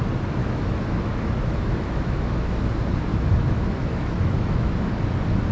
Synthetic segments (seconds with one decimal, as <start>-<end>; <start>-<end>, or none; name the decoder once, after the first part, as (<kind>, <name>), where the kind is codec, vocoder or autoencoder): 0.4-2.7 (autoencoder, DAC-VAE); 3.1-4.9